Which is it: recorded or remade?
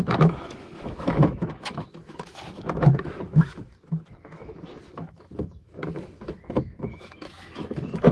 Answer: remade